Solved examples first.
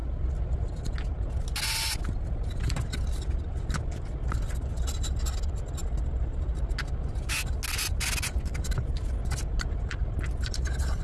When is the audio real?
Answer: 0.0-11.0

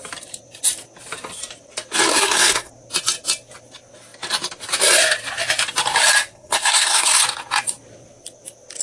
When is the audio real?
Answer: 0.0-2.1; 2.7-6.3; 7.2-8.8

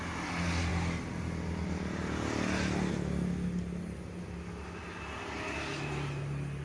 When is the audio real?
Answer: 0.0-6.6